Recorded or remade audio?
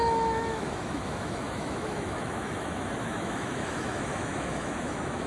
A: remade